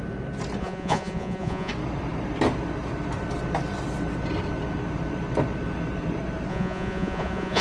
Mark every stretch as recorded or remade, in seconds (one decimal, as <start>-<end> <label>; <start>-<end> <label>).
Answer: 0.0-0.6 recorded; 0.6-1.7 remade; 1.7-6.5 recorded; 6.5-7.6 remade